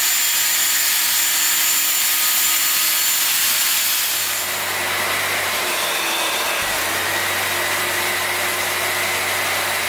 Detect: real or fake real